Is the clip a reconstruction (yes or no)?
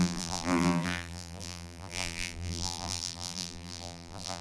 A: yes